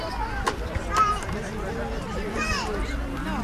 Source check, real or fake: real